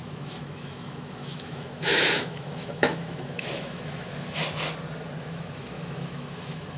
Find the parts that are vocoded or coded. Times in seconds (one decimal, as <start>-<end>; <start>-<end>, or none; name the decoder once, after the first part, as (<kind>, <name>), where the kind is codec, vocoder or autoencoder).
0.0-4.4 (autoencoder, DAC-VAE); 5.2-6.8